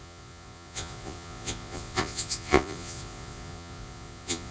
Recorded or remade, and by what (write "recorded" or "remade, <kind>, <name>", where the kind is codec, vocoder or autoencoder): remade, vocoder, Vocos